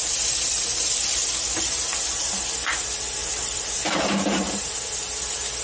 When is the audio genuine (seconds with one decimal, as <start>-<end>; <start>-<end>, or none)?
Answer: 0.0-3.2; 4.7-5.6